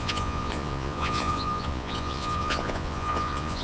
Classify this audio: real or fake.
fake